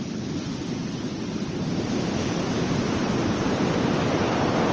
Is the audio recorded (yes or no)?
yes